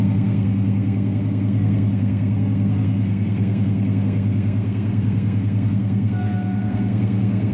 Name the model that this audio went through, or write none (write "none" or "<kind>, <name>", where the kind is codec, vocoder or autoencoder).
codec, SNAC